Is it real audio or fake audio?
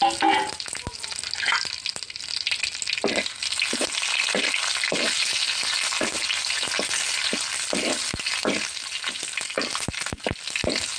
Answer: real